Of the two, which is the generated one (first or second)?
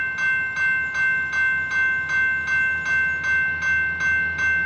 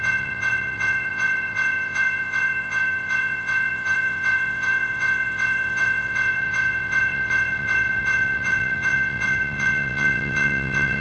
second